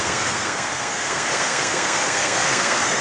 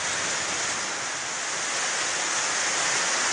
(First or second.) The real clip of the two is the second